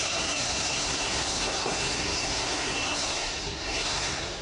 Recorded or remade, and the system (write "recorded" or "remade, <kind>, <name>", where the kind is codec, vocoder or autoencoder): remade, codec, SNAC